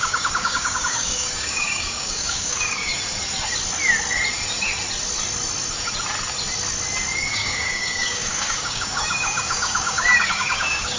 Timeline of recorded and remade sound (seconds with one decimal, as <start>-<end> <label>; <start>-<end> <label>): 0.0-2.9 remade; 2.9-7.3 recorded; 7.3-11.0 remade